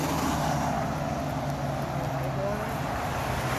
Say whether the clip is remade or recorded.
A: recorded